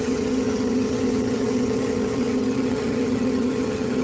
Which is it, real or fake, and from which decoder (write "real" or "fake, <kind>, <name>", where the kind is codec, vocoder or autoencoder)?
fake, vocoder, HiFi-GAN